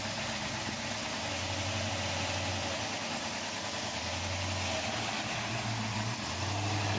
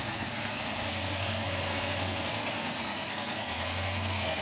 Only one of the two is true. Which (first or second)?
first